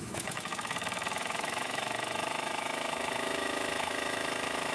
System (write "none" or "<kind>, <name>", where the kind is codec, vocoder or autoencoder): autoencoder, DAC-VAE